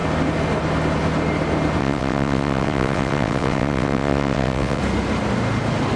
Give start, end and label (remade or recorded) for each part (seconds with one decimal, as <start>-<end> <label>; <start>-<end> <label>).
0.0-1.8 recorded; 1.8-4.8 remade; 4.8-6.0 recorded